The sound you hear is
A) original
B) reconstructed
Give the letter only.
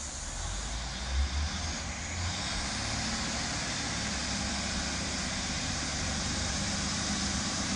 A